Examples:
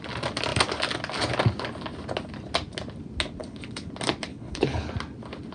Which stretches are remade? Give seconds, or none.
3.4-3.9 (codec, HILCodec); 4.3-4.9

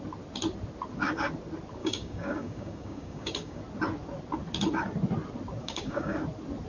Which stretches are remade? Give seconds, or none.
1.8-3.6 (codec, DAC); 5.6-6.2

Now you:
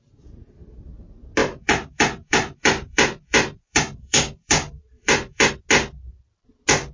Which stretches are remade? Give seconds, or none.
1.4-5.5 (vocoder, BigVGAN v2)

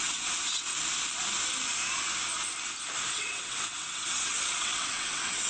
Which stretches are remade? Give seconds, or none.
0.0-0.7 (vocoder, WaveNeXt); 3.1-5.5